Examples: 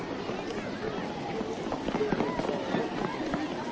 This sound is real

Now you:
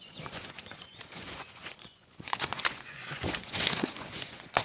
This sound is fake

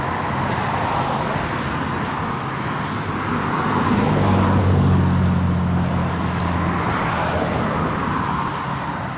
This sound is real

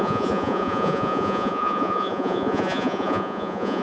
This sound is fake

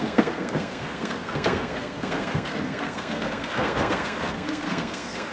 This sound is fake